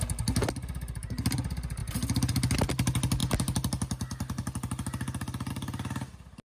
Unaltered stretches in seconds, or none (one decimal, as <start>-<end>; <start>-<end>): 0.0-6.5